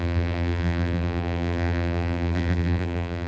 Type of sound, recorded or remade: remade